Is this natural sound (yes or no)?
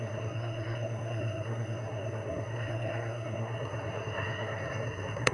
no